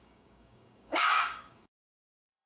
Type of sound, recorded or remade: remade